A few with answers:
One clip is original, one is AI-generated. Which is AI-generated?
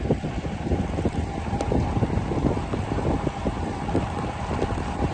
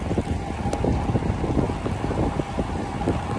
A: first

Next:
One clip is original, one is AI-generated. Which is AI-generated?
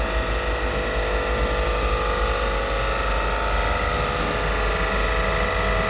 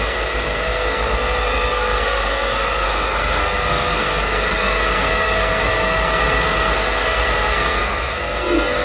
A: second